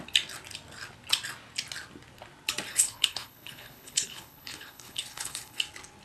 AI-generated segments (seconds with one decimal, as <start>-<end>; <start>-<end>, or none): 2.7-5.6